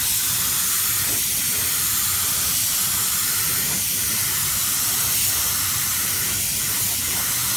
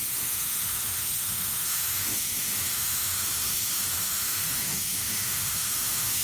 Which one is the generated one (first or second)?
second